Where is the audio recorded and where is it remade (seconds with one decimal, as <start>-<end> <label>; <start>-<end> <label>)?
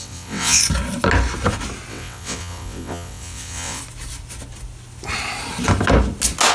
0.0-0.6 remade; 0.6-1.9 recorded; 1.9-3.8 remade; 3.8-6.5 recorded